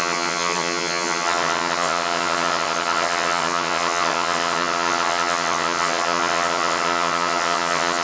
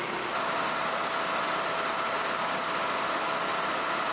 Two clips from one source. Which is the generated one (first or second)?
first